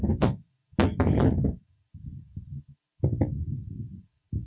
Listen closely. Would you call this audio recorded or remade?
recorded